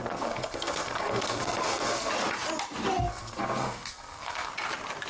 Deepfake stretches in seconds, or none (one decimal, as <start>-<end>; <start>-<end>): 0.0-2.1; 3.1-4.5